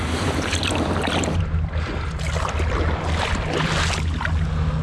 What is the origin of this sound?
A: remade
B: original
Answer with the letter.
B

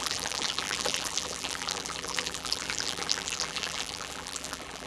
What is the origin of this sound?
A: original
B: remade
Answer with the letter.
B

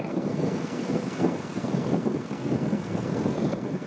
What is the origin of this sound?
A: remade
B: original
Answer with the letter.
A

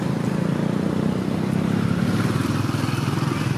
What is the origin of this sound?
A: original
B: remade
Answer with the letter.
A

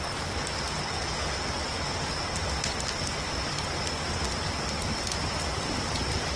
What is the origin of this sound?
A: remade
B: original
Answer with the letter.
B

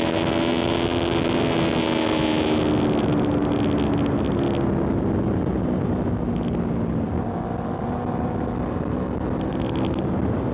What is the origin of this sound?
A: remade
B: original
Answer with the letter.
B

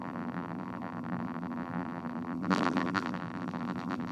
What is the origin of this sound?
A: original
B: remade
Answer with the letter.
B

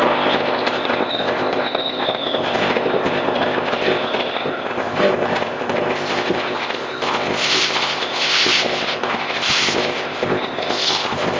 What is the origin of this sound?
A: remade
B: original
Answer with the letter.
A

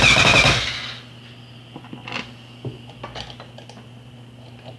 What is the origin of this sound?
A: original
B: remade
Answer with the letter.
A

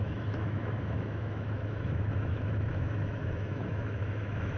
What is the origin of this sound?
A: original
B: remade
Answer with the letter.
B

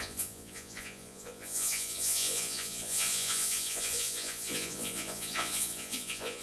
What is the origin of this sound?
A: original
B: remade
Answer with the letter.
B